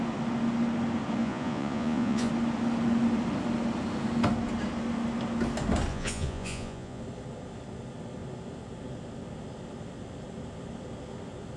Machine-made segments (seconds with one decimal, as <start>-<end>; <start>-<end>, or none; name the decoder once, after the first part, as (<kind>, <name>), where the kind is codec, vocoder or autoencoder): 1.2-2.3 (vocoder, Vocos); 5.9-7.0